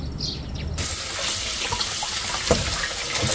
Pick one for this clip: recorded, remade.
recorded